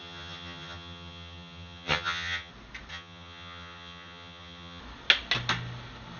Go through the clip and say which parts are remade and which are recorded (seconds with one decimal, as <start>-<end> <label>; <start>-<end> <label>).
0.0-2.5 remade; 2.5-2.9 recorded; 2.9-4.8 remade; 4.8-6.2 recorded